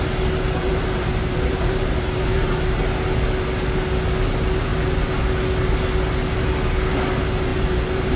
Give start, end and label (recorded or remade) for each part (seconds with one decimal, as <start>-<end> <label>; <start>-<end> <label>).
0.0-0.6 recorded; 0.6-2.8 remade; 2.8-7.5 recorded; 7.5-8.2 remade